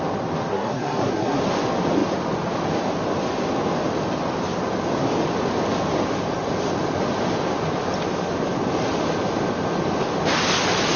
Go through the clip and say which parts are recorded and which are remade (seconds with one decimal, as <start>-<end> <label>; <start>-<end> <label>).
0.0-0.5 recorded; 0.5-1.4 remade; 1.4-11.0 recorded